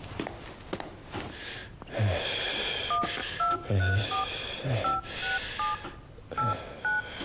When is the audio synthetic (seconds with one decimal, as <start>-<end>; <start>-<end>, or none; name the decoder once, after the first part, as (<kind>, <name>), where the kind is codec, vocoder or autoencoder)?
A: 3.2-4.2 (codec, DAC)